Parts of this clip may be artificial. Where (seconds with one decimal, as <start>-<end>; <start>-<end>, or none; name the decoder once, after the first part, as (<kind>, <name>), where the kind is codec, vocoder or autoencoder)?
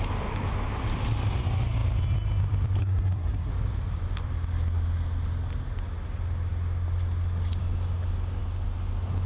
2.8-3.5 (codec, SNAC)